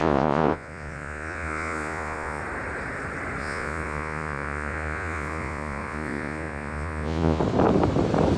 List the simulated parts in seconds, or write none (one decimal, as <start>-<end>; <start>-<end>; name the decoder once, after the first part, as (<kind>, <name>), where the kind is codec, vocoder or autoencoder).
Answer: 0.0-2.4 (vocoder, Vocos); 3.4-7.4